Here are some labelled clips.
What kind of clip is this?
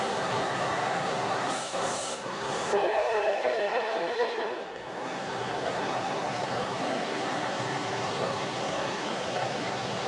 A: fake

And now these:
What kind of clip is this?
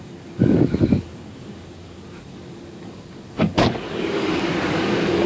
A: fake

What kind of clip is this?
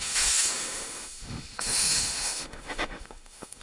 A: fake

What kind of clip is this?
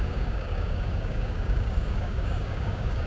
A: fake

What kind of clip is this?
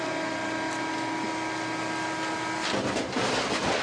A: real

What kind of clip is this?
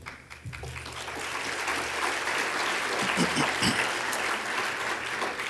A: real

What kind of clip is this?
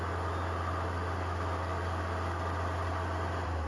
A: real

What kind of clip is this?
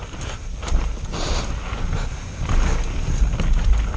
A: real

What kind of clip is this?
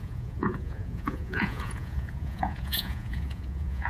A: fake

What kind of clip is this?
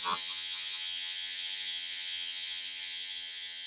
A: fake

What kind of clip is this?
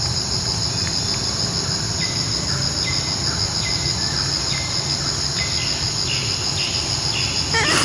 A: real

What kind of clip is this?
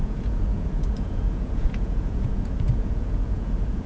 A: fake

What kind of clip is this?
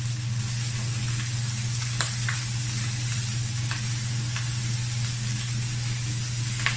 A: real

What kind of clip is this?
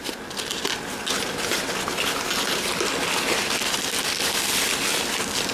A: real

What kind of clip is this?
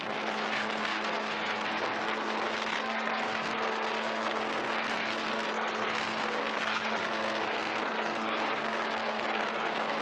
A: fake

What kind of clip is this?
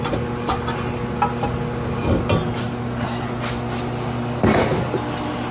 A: real